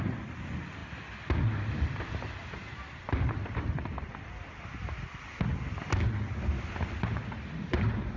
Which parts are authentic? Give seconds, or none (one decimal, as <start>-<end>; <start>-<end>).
0.0-8.2